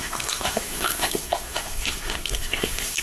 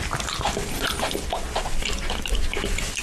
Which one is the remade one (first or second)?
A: first